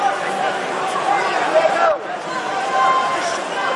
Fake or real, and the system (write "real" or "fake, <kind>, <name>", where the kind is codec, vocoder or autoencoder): real